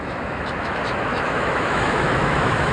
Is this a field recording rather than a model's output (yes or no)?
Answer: no